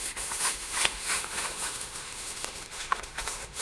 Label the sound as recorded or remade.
remade